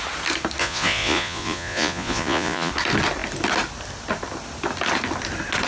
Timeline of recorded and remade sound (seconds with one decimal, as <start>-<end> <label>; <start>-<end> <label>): 0.0-0.6 recorded; 0.6-2.7 remade; 2.7-5.7 recorded